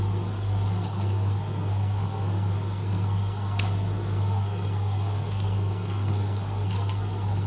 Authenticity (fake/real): fake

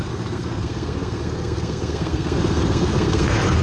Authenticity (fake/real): fake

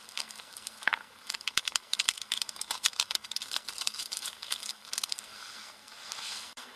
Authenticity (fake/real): fake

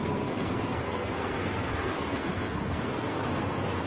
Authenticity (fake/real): fake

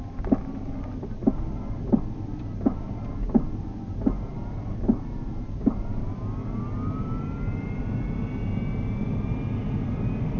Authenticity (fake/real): real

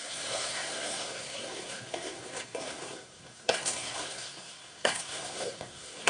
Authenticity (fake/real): fake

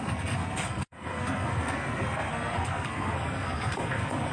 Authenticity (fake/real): fake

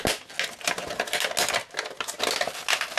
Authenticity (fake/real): real